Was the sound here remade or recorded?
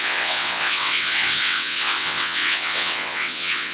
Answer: remade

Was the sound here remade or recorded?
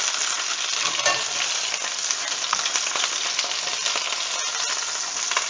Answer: recorded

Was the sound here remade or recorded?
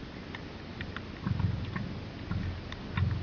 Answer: recorded